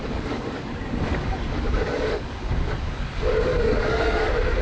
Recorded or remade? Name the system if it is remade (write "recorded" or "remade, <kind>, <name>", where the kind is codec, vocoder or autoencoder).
remade, codec, DAC